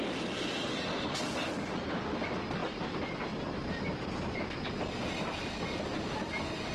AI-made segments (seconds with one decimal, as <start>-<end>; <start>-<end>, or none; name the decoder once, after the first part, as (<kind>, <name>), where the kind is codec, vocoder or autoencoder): none